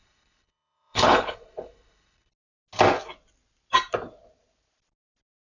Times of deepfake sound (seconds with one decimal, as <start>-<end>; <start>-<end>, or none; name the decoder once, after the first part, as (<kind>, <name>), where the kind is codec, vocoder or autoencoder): 0.0-2.3 (codec, HILCodec)